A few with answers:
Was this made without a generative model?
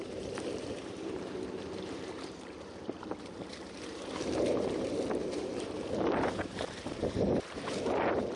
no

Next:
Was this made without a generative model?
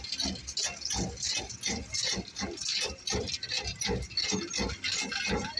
yes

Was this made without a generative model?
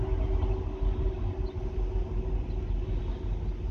yes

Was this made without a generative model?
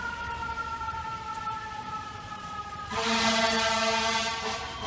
no